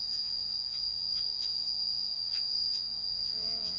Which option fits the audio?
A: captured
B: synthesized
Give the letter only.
B